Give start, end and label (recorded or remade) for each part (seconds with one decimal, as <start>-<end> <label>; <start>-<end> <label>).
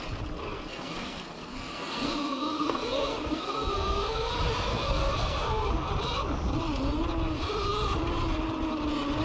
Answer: 0.0-0.4 recorded; 0.4-4.3 remade; 4.3-4.7 recorded; 4.7-5.9 remade; 5.9-9.2 recorded